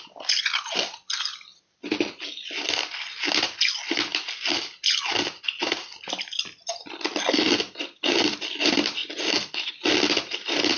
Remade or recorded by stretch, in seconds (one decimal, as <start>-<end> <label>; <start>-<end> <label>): 0.0-10.8 recorded